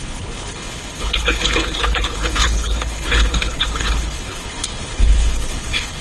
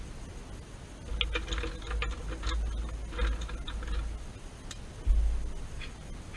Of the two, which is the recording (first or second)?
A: second